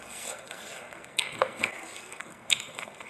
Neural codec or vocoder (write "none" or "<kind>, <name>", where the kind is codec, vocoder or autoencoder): codec, SNAC